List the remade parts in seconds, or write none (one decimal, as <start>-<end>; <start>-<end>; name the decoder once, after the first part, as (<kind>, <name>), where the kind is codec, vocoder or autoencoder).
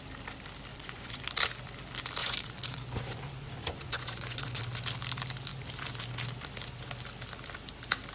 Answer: 0.7-1.2 (vocoder, Vocos); 2.2-4.6